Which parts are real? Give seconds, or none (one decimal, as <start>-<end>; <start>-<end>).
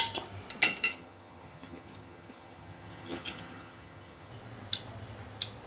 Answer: 0.0-0.9; 4.3-5.7